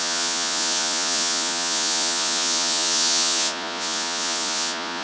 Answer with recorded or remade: remade